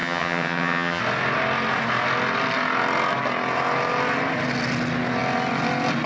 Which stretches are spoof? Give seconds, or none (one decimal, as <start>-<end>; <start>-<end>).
0.0-1.0